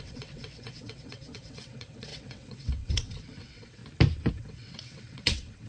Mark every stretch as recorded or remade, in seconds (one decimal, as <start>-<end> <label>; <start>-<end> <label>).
0.0-3.8 remade; 3.8-4.3 recorded; 4.3-5.7 remade

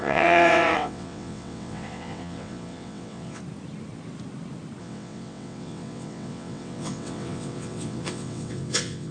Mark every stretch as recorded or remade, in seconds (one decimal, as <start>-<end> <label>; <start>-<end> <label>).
0.0-3.4 remade; 3.4-4.8 recorded; 4.8-9.1 remade

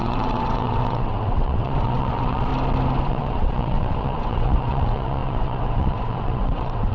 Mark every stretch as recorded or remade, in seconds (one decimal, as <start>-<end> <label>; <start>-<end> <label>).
0.0-2.5 remade; 2.5-3.0 recorded; 3.0-6.9 remade

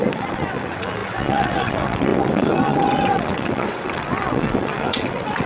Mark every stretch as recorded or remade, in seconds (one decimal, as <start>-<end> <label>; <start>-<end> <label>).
0.0-5.5 remade

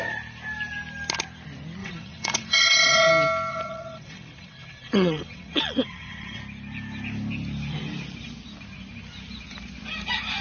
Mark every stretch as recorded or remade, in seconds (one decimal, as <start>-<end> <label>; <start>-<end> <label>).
0.0-1.8 recorded; 1.8-3.1 remade; 3.1-3.5 recorded; 3.5-6.4 remade; 6.4-10.4 recorded